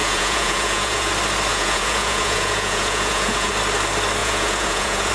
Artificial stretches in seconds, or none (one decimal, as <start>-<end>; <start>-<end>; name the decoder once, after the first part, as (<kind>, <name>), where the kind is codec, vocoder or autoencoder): 0.0-1.1 (vocoder, Vocos); 1.5-3.5; 4.2-5.1